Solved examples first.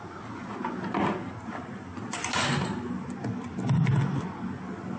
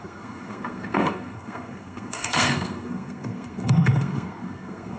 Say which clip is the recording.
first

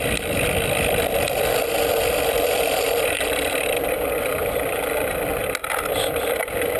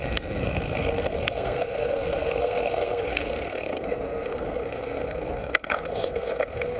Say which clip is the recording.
first